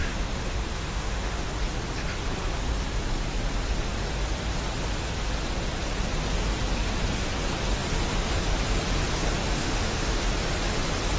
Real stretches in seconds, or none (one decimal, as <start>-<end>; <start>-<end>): 1.5-9.4; 10.2-11.2